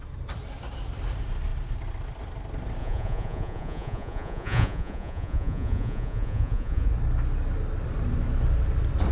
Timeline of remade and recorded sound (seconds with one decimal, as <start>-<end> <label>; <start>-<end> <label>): 0.0-2.8 recorded; 2.8-6.9 remade; 6.9-9.1 recorded